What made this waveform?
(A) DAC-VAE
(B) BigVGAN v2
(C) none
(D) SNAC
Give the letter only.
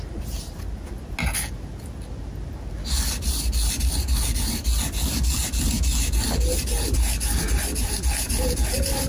C